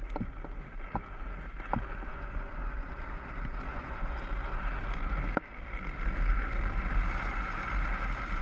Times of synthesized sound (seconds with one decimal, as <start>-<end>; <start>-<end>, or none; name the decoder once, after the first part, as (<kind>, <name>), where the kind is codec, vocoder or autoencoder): 2.1-2.9 (vocoder, Vocos); 3.7-4.2